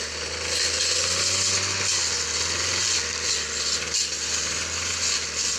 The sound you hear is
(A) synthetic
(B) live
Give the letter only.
B